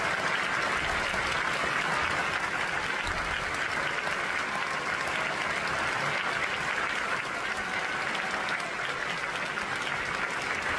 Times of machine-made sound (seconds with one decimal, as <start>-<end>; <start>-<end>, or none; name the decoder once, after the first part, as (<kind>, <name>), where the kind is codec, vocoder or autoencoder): none